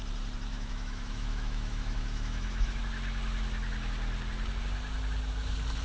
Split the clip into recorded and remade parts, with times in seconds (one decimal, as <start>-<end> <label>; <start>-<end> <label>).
0.0-0.5 recorded; 0.5-2.8 remade; 2.8-5.8 recorded